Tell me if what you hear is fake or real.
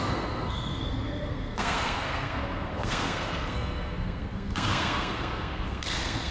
fake